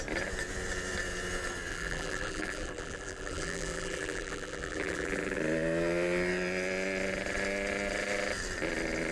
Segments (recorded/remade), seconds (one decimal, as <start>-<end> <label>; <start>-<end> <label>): 0.0-1.7 recorded; 1.7-5.4 remade; 5.4-9.1 recorded